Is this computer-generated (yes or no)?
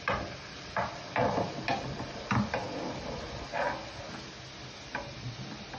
no